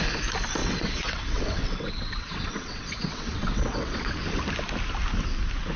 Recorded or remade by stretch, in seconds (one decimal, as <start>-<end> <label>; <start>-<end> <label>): 0.0-0.6 recorded; 0.6-4.1 remade; 4.1-5.8 recorded